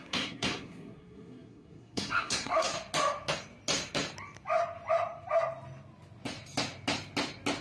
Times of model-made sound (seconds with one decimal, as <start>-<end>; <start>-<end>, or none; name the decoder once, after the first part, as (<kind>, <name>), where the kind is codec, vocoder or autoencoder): 0.0-2.7 (codec, SNAC)